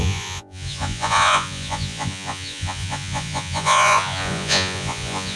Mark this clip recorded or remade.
remade